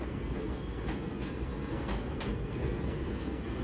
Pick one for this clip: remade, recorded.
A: remade